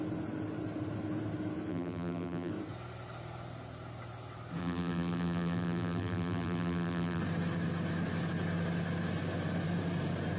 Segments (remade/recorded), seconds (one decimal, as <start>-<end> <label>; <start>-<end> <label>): 0.0-1.7 recorded; 1.7-2.5 remade; 2.5-4.6 recorded; 4.6-7.2 remade; 7.2-10.4 recorded